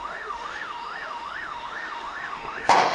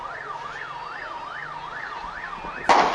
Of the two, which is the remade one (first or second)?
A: first